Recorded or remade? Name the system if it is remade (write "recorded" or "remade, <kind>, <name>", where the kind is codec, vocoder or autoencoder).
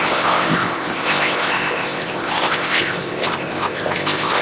remade, codec, ZipCodec